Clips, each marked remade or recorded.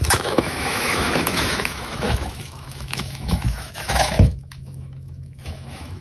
remade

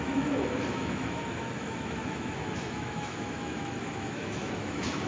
remade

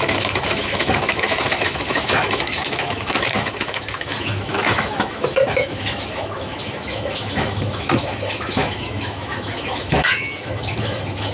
remade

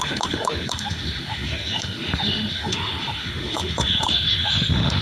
remade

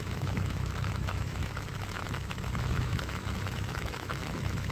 remade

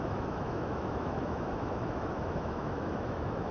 remade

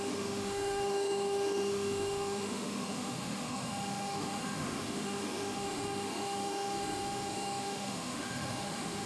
remade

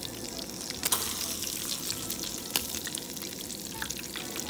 recorded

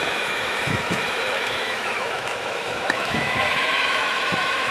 remade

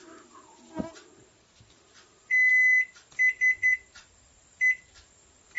recorded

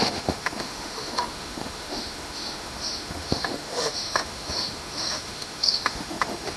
remade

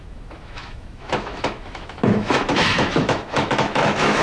remade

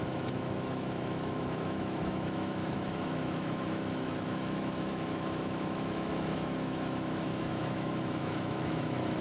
remade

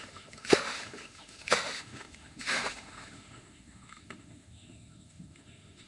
remade